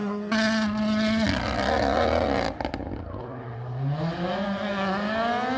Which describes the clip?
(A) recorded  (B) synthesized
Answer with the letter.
A